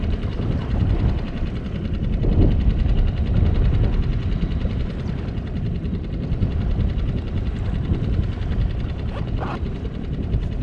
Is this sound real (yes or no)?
no